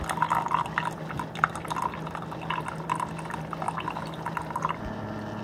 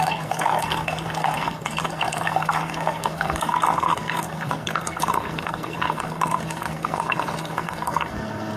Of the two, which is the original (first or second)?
first